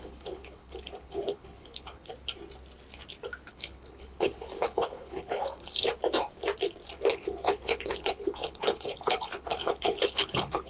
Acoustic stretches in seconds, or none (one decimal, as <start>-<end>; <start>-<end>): 2.1-3.5; 5.9-7.1